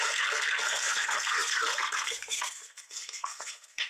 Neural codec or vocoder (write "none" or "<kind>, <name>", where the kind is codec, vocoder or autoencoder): codec, SNAC